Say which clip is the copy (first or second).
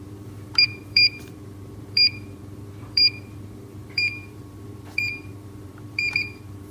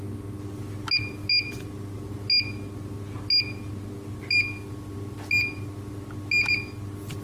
first